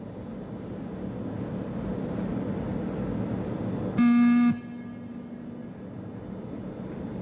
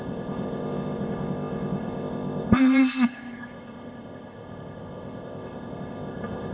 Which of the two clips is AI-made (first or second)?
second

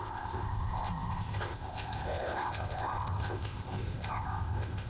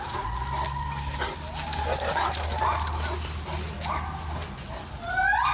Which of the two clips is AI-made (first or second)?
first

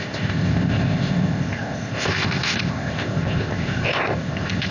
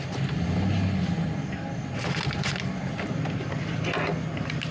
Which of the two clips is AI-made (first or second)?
first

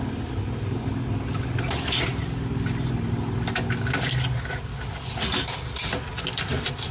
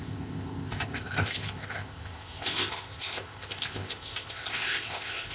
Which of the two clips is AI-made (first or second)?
second